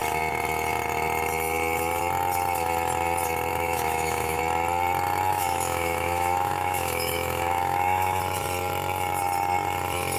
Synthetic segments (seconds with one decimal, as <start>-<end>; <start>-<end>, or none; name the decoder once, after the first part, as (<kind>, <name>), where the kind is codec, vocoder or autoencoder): 3.5-4.4 (autoencoder, DAC-VAE); 5.3-8.2